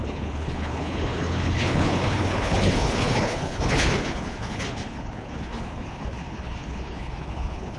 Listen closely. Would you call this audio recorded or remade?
remade